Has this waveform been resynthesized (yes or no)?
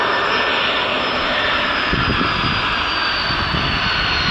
no